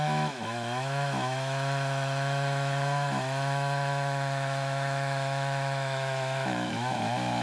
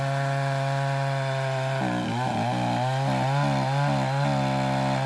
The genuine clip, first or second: second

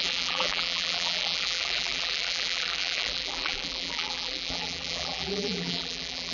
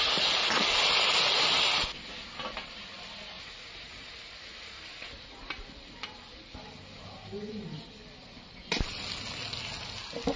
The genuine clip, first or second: second